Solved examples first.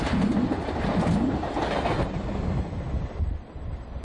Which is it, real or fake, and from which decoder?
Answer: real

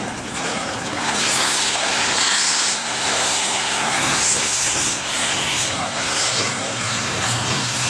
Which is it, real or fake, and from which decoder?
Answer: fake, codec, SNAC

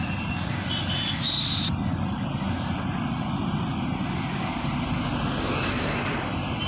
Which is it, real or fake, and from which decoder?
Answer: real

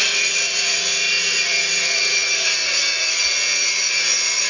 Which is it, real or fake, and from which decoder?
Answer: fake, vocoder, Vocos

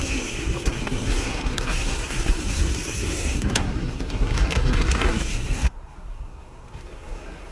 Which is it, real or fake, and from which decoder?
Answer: fake, codec, SNAC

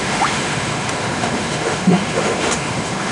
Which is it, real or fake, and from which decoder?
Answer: fake, autoencoder, DAC-VAE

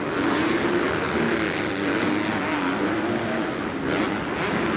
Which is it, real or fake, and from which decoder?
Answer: real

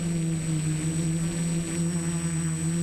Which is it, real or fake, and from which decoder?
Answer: real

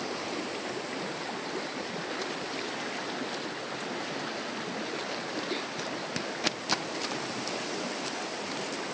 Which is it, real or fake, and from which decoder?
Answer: real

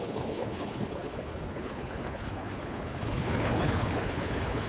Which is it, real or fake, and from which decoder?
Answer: fake, codec, HILCodec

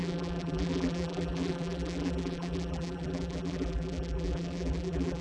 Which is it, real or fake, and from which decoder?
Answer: fake, vocoder, BigVGAN v2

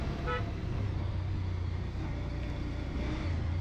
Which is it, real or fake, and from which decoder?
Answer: real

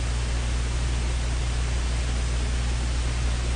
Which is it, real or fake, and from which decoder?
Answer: real